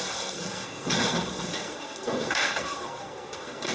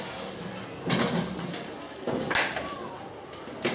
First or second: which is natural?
second